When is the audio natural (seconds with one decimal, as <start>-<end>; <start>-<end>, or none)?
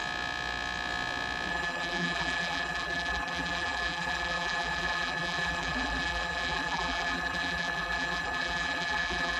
0.0-1.5